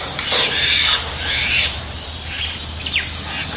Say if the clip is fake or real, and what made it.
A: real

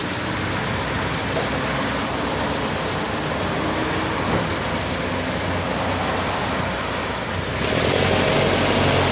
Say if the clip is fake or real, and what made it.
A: real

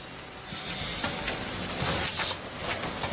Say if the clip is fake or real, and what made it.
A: real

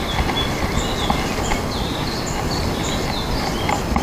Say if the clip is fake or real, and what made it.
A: real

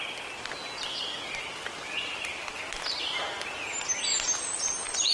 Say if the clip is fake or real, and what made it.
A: real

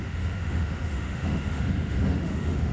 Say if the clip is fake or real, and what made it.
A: fake, autoencoder, DAC-VAE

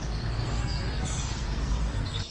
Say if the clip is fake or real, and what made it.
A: fake, codec, SNAC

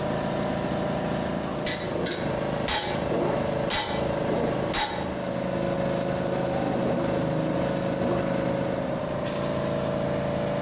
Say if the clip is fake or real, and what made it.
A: real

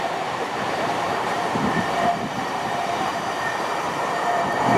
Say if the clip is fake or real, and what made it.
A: fake, vocoder, BigVGAN v2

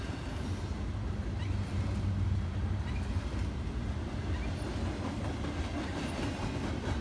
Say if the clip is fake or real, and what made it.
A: real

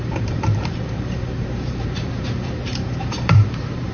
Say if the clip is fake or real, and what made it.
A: fake, vocoder, BigVGAN v2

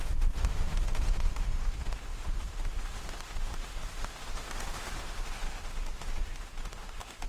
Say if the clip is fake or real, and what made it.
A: fake, autoencoder, DAC-VAE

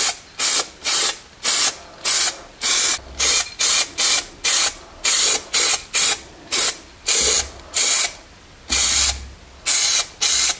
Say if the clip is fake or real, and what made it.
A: real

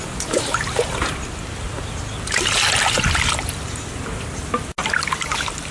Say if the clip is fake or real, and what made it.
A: real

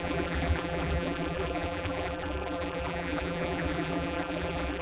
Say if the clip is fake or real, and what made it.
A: fake, vocoder, BigVGAN v2